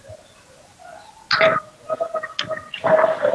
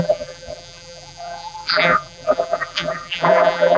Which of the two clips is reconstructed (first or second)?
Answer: second